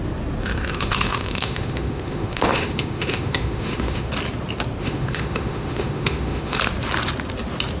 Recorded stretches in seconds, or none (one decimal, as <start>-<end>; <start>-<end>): 0.0-0.4; 4.1-4.8; 6.6-7.8